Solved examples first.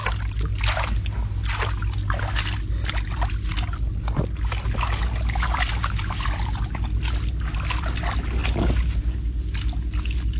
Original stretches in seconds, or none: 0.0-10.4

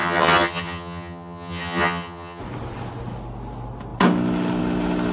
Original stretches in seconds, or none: 2.4-5.1

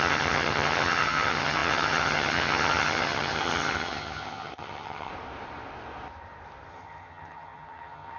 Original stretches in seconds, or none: 5.1-6.7

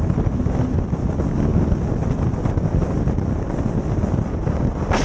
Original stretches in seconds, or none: 0.0-5.0

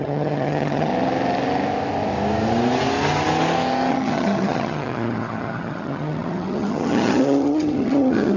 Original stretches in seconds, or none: 0.9-3.9

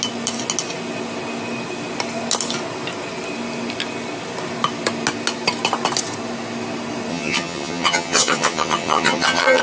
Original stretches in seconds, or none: 0.0-7.1

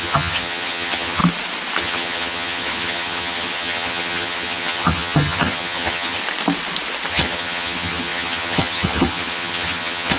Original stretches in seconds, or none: 1.2-1.8; 6.2-7.1

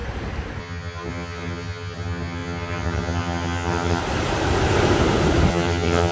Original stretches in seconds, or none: 0.0-0.6; 4.0-5.5